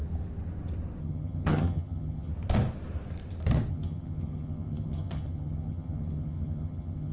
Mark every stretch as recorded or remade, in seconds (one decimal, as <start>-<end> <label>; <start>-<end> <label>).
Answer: 0.0-1.0 recorded; 1.0-2.3 remade; 2.3-3.7 recorded; 3.7-7.1 remade